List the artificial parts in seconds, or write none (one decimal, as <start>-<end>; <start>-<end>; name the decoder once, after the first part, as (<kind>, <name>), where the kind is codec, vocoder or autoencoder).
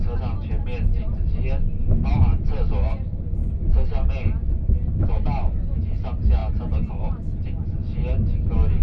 none